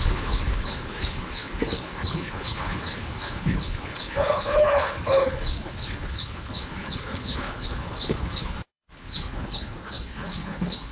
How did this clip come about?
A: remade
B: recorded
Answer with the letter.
A